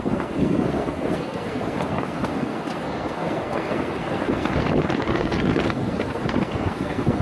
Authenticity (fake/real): fake